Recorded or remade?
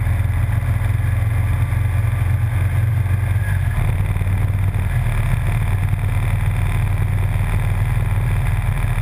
recorded